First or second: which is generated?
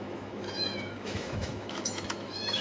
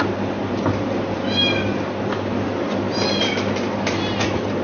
first